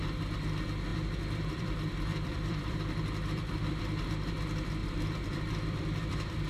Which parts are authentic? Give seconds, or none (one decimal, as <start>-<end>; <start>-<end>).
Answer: 0.0-0.9; 3.8-4.8